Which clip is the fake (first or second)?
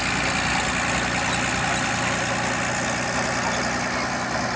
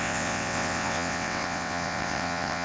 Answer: second